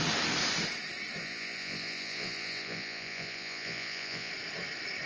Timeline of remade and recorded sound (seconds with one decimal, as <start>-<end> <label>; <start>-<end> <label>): 0.0-1.2 recorded; 1.2-4.3 remade; 4.3-5.1 recorded